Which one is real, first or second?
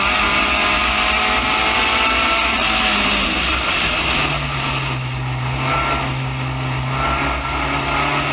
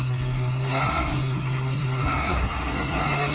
first